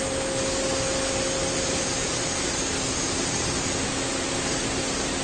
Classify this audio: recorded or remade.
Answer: recorded